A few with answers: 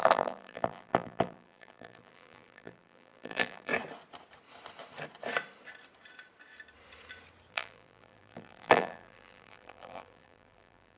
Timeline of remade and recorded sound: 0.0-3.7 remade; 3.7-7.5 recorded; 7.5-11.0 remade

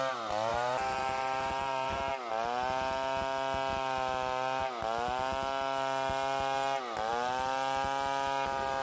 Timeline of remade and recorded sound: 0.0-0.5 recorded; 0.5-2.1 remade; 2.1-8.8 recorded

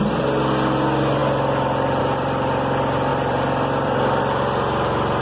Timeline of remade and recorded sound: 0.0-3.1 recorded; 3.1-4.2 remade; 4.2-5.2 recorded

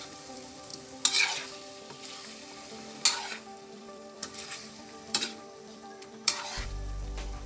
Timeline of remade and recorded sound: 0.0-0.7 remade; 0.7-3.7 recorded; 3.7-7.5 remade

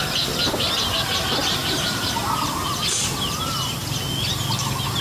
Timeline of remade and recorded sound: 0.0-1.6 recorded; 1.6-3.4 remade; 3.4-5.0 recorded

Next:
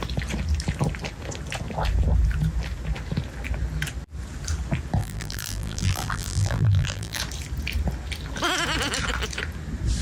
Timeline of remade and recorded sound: 0.0-5.0 recorded; 5.0-7.2 remade; 7.2-10.0 recorded